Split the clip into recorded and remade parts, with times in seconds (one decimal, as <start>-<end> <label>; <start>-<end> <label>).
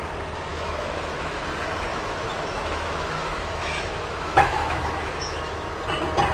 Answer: 0.0-0.5 recorded; 0.5-1.4 remade; 1.4-1.9 recorded; 1.9-5.7 remade; 5.7-6.3 recorded